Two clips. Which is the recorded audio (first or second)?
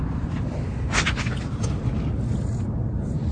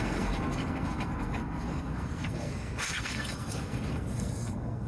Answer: first